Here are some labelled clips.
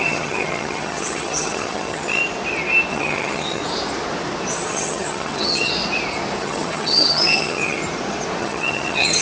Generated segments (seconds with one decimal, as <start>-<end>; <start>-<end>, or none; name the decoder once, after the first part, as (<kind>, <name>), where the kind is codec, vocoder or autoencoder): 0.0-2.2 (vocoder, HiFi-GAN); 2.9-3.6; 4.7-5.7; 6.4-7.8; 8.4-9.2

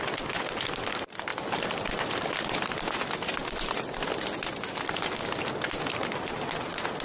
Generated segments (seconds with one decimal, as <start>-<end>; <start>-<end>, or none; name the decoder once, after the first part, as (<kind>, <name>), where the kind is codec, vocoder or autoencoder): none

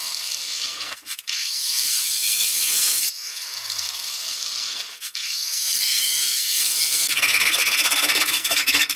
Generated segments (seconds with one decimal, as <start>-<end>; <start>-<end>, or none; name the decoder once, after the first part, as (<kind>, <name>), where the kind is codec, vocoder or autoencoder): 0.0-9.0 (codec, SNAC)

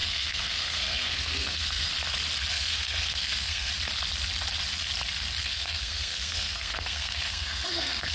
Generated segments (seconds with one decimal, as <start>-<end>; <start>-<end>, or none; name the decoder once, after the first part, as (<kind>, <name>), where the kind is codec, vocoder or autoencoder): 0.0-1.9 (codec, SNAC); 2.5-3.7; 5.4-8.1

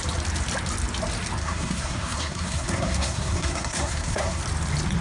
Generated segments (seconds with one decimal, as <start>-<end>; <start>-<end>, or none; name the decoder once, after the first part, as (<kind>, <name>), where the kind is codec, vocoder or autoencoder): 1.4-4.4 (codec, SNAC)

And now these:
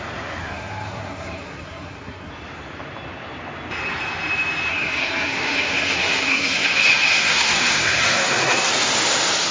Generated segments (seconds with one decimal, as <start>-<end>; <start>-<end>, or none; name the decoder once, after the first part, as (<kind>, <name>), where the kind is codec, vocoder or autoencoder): 0.4-2.3 (codec, SNAC); 4.7-8.7

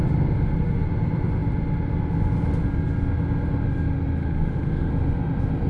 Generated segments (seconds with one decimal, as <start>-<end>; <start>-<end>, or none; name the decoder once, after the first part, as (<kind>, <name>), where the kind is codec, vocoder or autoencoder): 4.2-4.9 (autoencoder, DAC-VAE)

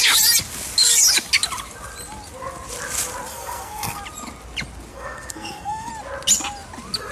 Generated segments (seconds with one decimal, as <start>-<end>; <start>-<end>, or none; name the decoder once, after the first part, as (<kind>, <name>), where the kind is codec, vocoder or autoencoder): 3.3-4.0 (codec, SNAC); 4.9-5.9